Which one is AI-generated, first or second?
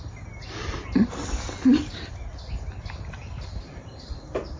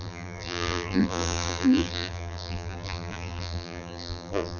second